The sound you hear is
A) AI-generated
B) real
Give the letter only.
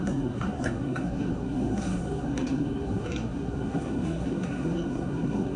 A